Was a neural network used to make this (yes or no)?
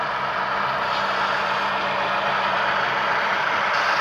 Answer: yes